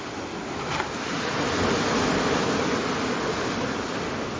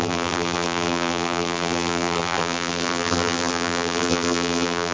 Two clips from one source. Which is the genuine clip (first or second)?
first